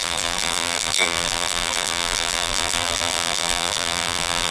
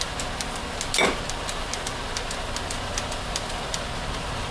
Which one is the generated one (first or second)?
first